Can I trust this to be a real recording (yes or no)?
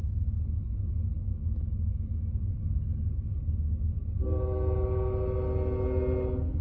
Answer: yes